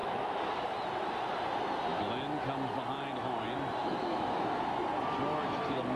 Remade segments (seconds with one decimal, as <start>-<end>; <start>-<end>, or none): 0.0-0.5; 3.8-4.7